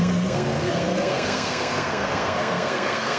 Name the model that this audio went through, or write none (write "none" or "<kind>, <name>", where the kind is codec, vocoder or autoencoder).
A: codec, SNAC